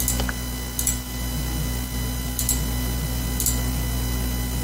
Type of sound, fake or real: real